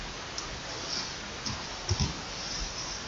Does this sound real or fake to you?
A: real